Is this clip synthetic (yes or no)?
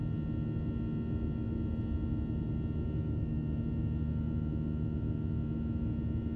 no